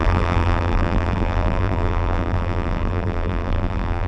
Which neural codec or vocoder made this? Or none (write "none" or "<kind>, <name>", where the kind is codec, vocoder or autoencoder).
vocoder, BigVGAN v2